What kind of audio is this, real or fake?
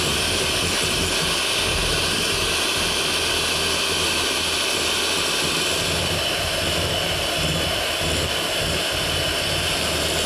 real